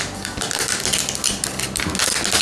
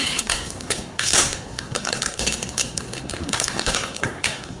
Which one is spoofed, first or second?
second